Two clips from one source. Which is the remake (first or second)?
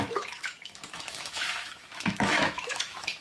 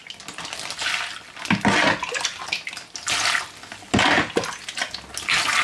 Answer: first